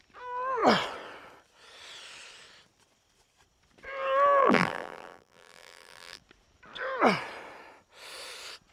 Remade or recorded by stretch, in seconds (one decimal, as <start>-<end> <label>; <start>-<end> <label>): 0.0-4.4 recorded; 4.4-6.2 remade; 6.2-8.7 recorded